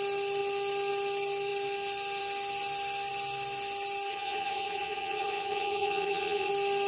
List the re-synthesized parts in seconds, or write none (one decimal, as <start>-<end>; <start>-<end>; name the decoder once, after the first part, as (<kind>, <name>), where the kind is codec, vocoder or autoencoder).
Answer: 4.1-6.5 (vocoder, HiFi-GAN)